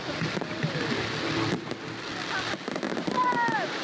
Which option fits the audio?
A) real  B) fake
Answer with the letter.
A